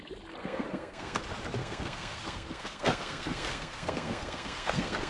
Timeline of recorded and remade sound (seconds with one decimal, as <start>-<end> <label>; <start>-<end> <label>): 0.0-0.4 recorded; 0.4-1.2 remade; 1.2-1.6 recorded; 1.6-5.1 remade